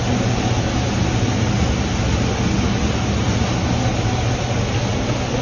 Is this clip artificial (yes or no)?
no